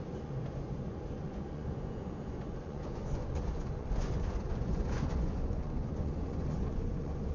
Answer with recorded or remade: remade